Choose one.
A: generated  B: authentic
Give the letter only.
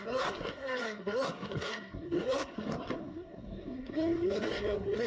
A